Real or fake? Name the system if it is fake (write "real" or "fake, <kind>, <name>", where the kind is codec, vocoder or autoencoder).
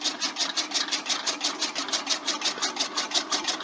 real